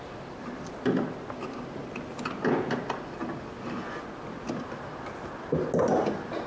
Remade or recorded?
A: recorded